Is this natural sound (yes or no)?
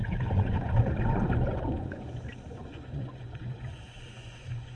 no